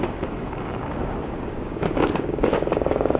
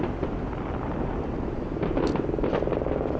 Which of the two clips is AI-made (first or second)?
first